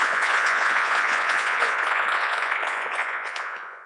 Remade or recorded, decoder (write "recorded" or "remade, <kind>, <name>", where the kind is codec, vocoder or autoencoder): remade, vocoder, Vocos